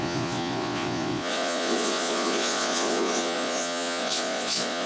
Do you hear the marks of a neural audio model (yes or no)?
yes